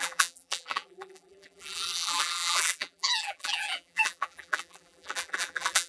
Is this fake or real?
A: fake